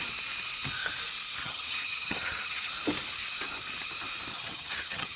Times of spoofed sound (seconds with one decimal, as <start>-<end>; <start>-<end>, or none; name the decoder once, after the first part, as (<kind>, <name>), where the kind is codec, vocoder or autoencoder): 1.4-2.7 (vocoder, HiFi-GAN); 4.3-5.2